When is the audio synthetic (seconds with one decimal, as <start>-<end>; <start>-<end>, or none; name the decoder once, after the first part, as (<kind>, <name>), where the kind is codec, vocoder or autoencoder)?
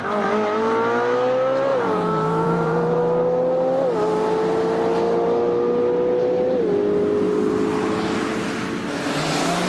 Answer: 1.7-3.0 (vocoder, Vocos)